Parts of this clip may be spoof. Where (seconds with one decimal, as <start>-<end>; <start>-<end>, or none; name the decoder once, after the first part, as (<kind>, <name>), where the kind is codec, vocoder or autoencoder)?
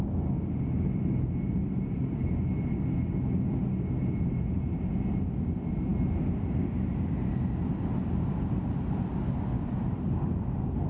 1.6-2.1 (vocoder, BigVGAN v2)